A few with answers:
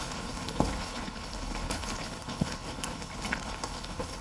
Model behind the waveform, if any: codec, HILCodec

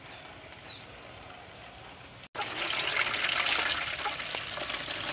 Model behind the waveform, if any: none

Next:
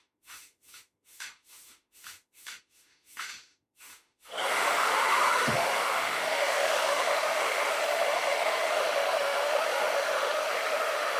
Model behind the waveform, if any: autoencoder, DAC-VAE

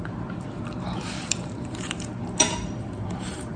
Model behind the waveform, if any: vocoder, BigVGAN v2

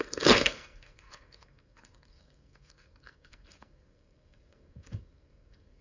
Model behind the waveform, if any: codec, SNAC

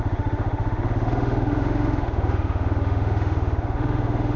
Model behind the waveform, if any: autoencoder, DAC-VAE